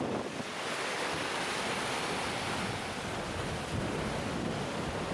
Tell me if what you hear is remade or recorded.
recorded